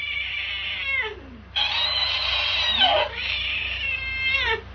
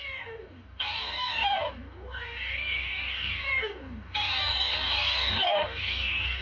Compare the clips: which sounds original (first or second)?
first